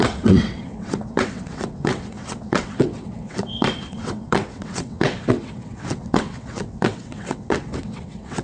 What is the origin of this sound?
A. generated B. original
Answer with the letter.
A